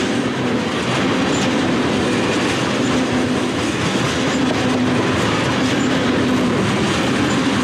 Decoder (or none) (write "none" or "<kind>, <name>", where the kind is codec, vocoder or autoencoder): none